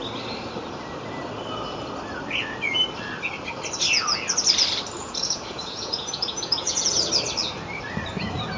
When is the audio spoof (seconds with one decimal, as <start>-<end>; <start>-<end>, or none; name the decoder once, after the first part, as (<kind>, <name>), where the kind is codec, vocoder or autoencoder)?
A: 5.0-7.1 (vocoder, Vocos)